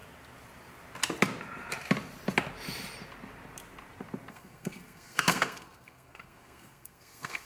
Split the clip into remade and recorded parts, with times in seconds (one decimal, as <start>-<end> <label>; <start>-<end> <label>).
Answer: 0.0-4.3 recorded; 4.3-7.5 remade